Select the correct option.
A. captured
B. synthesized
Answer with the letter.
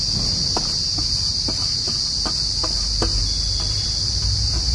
A